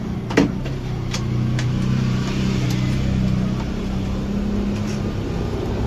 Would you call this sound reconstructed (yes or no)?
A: no